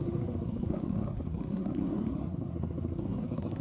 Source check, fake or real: fake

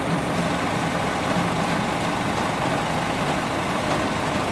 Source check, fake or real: real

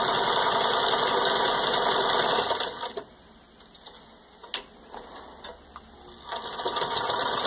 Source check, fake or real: real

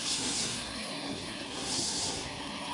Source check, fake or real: fake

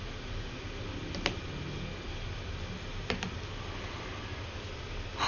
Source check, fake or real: real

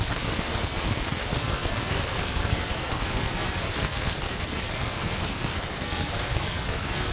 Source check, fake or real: fake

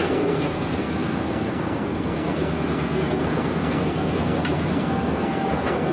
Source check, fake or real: fake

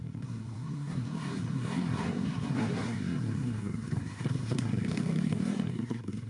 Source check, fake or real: fake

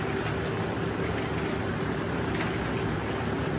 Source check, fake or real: real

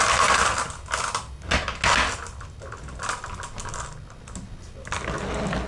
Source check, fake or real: real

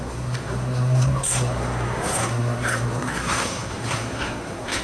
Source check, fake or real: fake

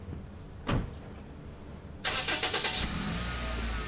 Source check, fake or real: real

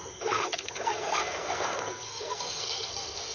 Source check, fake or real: fake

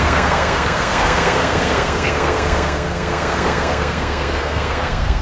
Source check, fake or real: fake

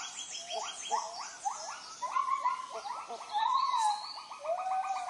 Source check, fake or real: real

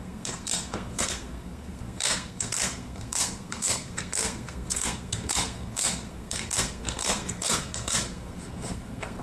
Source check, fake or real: fake